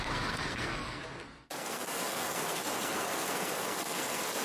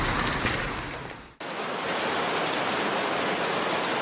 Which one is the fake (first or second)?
first